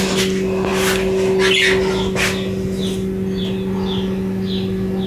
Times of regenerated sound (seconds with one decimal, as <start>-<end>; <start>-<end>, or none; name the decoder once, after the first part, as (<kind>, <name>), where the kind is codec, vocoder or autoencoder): none